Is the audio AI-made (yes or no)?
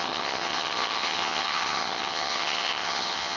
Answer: yes